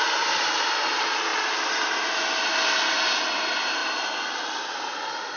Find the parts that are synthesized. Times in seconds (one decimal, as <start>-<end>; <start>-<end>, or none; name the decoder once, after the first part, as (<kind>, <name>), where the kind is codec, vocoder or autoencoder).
1.3-2.2 (vocoder, BigVGAN v2)